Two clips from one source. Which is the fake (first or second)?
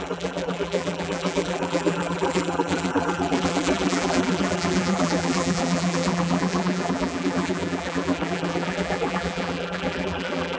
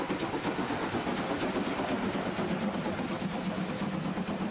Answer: first